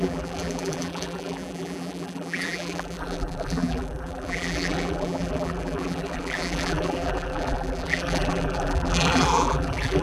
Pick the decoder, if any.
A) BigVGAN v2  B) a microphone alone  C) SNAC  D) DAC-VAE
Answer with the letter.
A